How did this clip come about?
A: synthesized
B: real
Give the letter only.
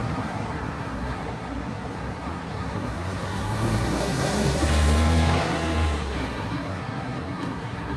A